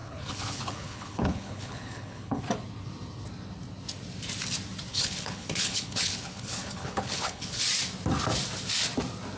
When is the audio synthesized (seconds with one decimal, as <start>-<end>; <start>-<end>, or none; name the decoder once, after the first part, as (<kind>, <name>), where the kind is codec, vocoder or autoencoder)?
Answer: 0.0-2.4 (codec, HILCodec); 4.9-7.6